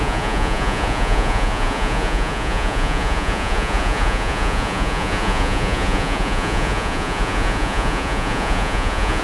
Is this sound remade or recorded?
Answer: remade